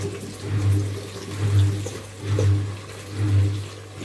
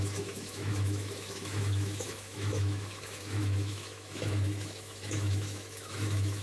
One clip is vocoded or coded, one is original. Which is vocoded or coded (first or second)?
second